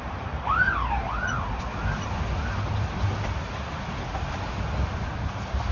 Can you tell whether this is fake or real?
real